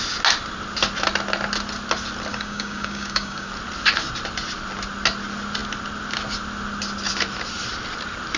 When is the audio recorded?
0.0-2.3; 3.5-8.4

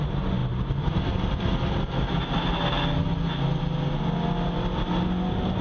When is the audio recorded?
0.0-5.6

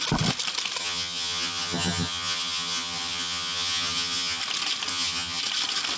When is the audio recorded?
0.0-0.8; 4.4-4.9; 5.4-6.0

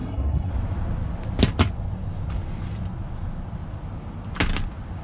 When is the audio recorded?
0.5-5.0

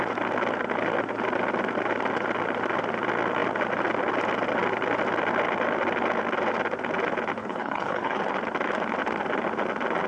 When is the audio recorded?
0.0-7.4; 8.2-10.1

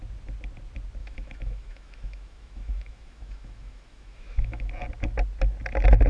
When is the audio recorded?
0.0-1.0; 4.7-6.1

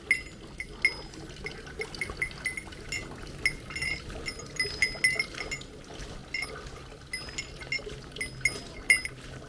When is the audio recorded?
0.0-9.5

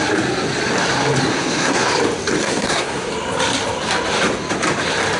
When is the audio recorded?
0.0-1.3; 1.9-2.4; 3.1-5.2